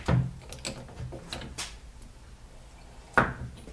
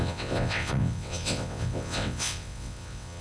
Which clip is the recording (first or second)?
first